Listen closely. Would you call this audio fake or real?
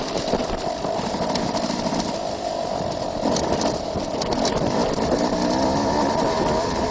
real